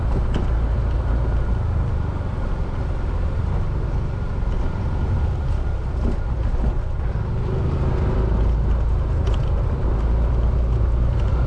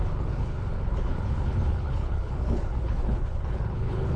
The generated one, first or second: second